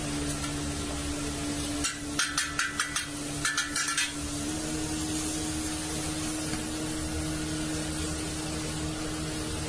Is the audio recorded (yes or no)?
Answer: yes